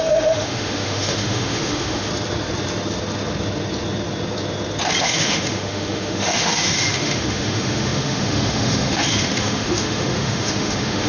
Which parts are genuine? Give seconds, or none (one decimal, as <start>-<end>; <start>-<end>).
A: 2.1-5.0